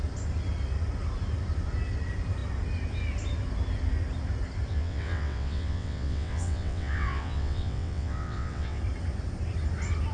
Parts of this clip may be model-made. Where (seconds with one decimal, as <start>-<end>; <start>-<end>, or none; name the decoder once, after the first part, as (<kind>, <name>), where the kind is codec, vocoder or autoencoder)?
4.7-8.8 (vocoder, WaveNeXt)